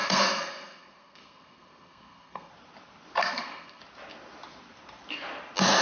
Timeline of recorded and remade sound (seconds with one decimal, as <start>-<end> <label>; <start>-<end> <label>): 0.0-2.5 remade; 2.5-3.2 recorded; 3.2-3.8 remade; 3.8-5.8 recorded